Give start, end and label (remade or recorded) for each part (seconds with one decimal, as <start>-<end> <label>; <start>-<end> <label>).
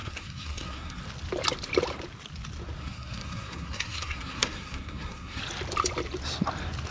0.0-1.0 remade; 1.0-2.8 recorded; 2.8-5.4 remade; 5.4-6.9 recorded